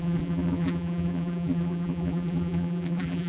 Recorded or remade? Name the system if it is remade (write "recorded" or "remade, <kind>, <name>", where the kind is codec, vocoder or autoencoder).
remade, vocoder, BigVGAN v2